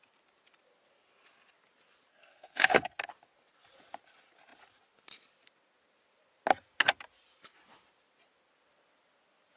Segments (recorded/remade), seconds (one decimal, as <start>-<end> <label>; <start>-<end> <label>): 0.0-2.1 recorded; 2.1-3.0 remade; 3.0-9.6 recorded